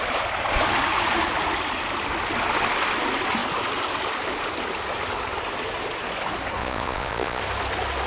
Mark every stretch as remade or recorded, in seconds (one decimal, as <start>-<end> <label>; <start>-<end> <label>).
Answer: 0.0-6.6 recorded; 6.6-7.4 remade; 7.4-8.1 recorded